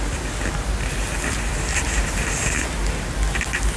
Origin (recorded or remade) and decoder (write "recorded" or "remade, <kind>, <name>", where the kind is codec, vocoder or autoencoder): recorded